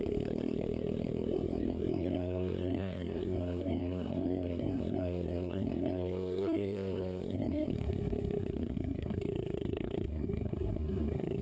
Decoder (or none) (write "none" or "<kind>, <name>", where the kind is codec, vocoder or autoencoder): codec, SNAC